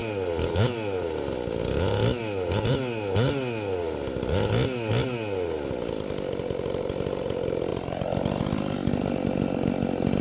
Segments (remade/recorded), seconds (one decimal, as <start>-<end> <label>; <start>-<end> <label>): 0.0-10.2 recorded